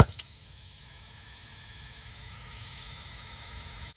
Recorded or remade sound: remade